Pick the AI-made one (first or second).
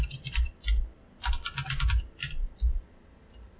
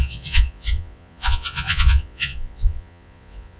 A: second